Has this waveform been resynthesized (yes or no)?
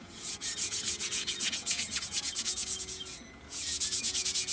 yes